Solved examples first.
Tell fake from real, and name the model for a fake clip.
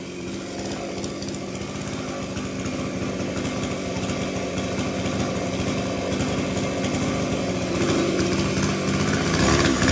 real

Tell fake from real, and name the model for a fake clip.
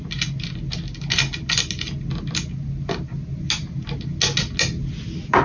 real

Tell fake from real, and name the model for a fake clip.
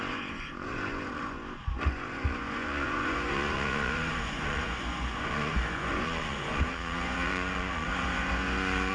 fake, vocoder, Vocos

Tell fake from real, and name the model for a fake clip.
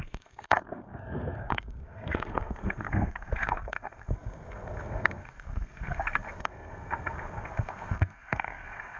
fake, codec, SNAC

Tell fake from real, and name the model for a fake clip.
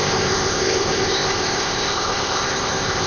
fake, codec, ZipCodec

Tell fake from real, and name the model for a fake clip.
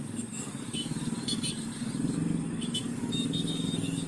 fake, codec, DAC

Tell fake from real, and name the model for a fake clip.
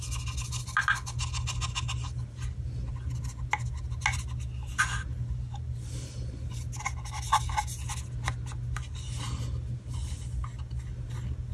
real